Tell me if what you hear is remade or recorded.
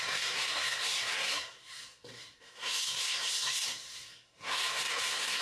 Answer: remade